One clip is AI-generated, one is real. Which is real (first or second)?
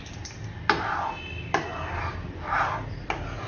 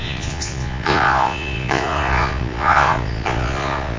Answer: first